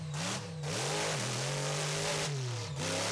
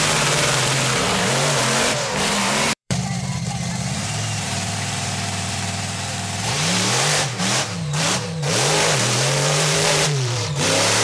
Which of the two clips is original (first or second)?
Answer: first